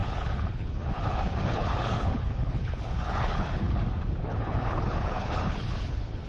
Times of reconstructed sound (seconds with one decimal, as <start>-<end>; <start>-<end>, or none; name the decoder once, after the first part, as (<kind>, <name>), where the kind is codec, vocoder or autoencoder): 0.0-3.8 (codec, HILCodec); 4.2-6.3